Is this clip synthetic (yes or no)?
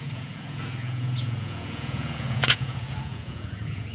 yes